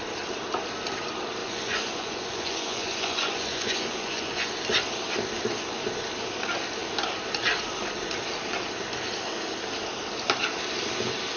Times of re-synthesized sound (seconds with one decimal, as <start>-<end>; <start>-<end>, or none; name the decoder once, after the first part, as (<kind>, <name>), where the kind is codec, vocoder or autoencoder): 1.4-4.5 (vocoder, Vocos)